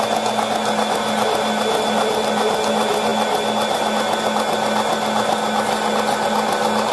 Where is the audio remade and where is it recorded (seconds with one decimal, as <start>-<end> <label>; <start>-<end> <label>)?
0.0-6.9 recorded

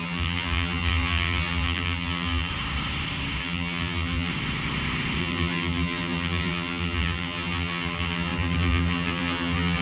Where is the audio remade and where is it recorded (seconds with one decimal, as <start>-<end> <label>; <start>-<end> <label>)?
0.0-2.5 remade; 2.5-3.4 recorded; 3.4-4.3 remade; 4.3-5.2 recorded; 5.2-9.8 remade